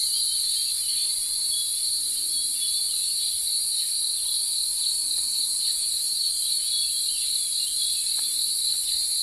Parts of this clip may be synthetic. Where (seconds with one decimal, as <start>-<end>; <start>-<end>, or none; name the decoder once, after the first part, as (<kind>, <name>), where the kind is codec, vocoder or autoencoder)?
6.0-6.5 (codec, DAC)